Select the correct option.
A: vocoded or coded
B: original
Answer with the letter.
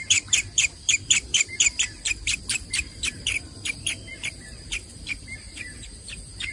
A